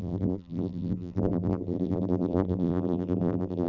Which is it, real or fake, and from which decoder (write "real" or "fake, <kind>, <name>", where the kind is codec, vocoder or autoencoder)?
fake, vocoder, BigVGAN v2